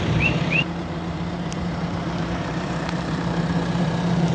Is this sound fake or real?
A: fake